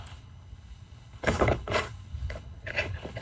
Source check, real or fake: fake